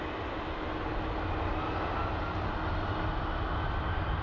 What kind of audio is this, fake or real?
real